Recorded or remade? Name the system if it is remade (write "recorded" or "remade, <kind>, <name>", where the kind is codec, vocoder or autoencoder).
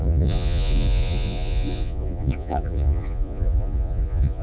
remade, vocoder, Vocos